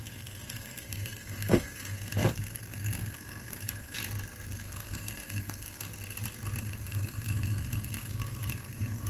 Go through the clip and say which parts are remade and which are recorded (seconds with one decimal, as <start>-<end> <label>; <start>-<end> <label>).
0.0-4.0 remade; 4.0-4.5 recorded; 4.5-5.9 remade; 5.9-6.6 recorded; 6.6-9.1 remade